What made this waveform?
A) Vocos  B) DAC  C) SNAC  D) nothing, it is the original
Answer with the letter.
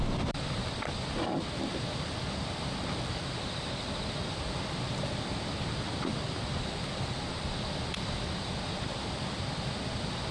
D